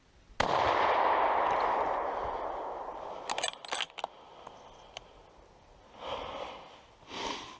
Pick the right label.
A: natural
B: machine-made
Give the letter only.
A